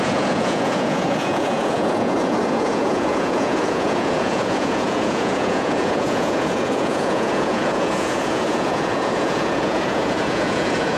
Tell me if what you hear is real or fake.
fake